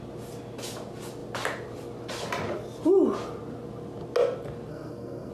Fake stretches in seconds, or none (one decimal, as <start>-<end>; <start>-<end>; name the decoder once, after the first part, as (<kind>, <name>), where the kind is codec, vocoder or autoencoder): 4.7-5.3 (codec, SNAC)

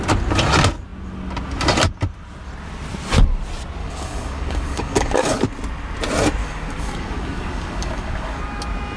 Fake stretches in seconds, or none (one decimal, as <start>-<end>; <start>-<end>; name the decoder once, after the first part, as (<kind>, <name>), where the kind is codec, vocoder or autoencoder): 3.8-5.4 (codec, DAC); 6.4-8.4

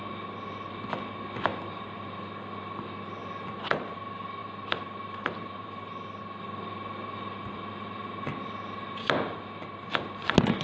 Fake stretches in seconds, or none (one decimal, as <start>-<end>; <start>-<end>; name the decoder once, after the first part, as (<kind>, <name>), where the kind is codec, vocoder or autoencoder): 1.5-2.4 (vocoder, BigVGAN v2); 4.4-6.2

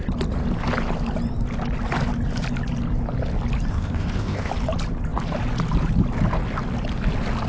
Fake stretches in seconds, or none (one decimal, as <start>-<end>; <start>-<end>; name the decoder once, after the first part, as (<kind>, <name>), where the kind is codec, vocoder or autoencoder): 3.7-4.5 (codec, ZipCodec)

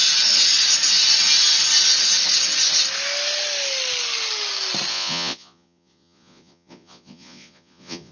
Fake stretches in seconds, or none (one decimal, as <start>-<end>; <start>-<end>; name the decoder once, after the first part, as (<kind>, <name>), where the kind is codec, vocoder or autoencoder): 4.9-8.1 (vocoder, Vocos)